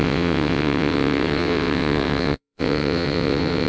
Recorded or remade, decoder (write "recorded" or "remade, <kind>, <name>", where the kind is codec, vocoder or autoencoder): remade, vocoder, WaveNeXt